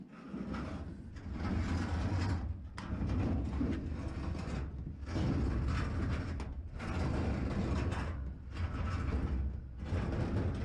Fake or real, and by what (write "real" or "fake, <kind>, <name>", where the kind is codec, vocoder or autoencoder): real